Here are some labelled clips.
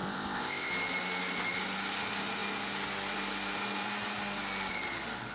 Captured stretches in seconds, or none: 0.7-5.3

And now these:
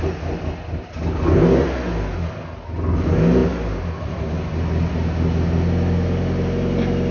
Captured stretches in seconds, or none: 0.0-7.1